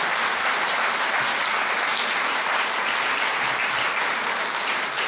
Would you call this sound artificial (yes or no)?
no